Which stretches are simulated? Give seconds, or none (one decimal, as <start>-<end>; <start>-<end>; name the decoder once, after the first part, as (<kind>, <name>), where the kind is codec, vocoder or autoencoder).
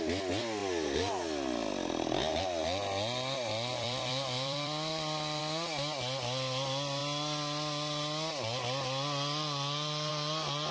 3.7-5.4 (vocoder, BigVGAN v2)